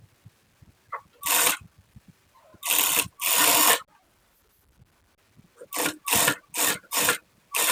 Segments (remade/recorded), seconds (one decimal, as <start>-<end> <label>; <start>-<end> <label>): 0.0-0.4 remade; 0.4-1.8 recorded; 1.8-2.5 remade; 2.5-6.7 recorded; 6.7-7.7 remade

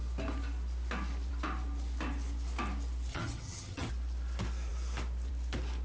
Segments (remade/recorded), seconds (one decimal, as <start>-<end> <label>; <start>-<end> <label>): 0.0-3.1 recorded; 3.1-3.9 remade; 3.9-5.8 recorded

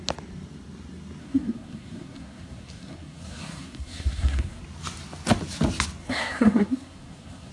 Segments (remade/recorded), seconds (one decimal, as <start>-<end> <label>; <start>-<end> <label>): 0.0-1.2 recorded; 1.2-4.6 remade; 4.6-6.0 recorded; 6.0-7.5 remade

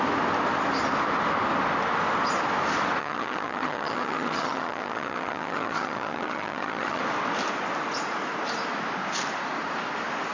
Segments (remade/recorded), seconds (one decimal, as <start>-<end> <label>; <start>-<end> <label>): 0.0-3.0 recorded; 3.0-7.0 remade; 7.0-10.3 recorded

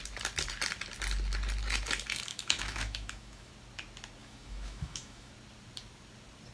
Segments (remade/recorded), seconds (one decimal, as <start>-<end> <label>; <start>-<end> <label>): 0.0-2.3 recorded; 2.3-3.5 remade; 3.5-4.2 recorded; 4.2-5.3 remade; 5.3-6.5 recorded

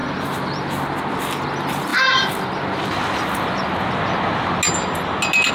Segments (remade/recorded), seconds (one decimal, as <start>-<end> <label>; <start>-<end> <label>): 0.0-5.5 recorded

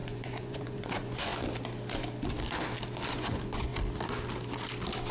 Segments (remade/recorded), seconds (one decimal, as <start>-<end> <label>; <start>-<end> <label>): 0.0-1.3 remade; 1.3-3.1 recorded; 3.1-3.7 remade; 3.7-5.1 recorded